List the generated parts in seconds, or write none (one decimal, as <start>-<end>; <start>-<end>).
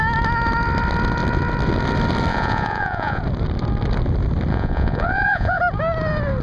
2.3-3.2; 4.5-5.6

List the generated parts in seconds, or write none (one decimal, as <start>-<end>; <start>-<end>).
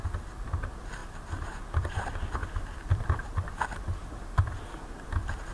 none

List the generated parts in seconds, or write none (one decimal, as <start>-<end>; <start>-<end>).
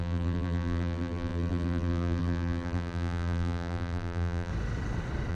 0.0-4.5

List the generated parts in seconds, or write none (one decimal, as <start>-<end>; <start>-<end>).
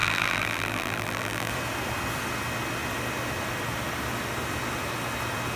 0.0-1.5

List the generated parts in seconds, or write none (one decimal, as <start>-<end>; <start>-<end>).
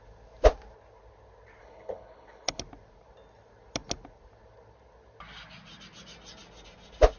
1.6-2.6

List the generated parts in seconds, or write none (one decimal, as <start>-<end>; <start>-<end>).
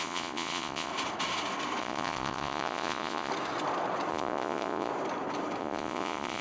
0.0-0.9; 1.8-3.3; 4.1-4.9; 5.6-6.4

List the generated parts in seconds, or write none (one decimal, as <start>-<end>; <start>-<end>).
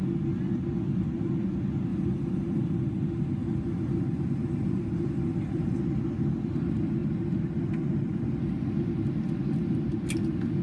1.9-5.8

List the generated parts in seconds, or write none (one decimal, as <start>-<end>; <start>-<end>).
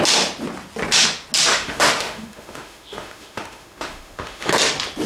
1.5-4.5